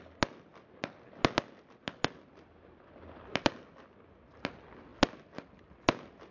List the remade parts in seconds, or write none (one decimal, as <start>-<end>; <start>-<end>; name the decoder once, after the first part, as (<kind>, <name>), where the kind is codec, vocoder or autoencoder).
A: none